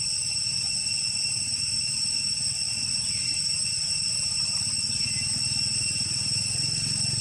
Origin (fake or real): real